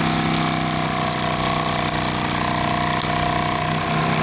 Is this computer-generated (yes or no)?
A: no